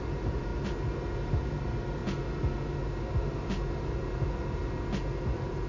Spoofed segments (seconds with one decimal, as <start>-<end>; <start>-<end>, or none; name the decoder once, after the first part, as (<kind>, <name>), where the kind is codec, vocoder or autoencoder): 0.0-0.5 (vocoder, BigVGAN v2); 1.3-2.0; 5.2-5.7